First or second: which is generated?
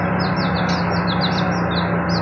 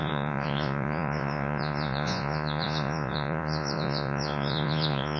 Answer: second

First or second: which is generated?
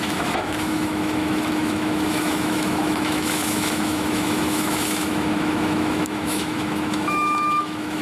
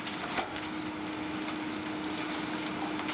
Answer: first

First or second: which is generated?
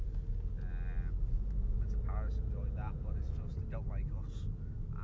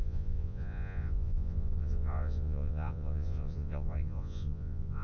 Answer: second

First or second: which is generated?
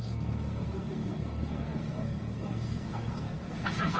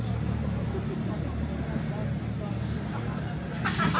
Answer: first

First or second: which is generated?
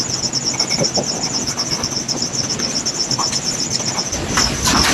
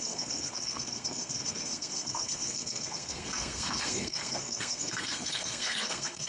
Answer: second